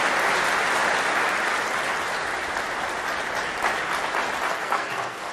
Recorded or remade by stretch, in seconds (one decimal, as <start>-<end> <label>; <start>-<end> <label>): 0.0-4.5 recorded; 4.5-5.3 remade